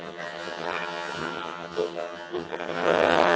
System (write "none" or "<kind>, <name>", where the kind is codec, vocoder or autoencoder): vocoder, HiFi-GAN